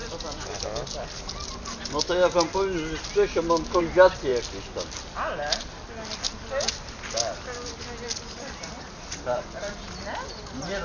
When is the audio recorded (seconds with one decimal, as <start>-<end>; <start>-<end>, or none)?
0.0-10.8